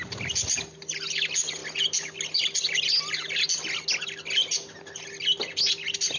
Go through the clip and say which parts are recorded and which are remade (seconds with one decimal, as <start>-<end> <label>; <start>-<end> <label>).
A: 0.0-6.2 recorded